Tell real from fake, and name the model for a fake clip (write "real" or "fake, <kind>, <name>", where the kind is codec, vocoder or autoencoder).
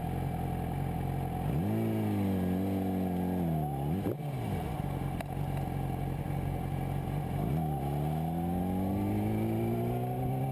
real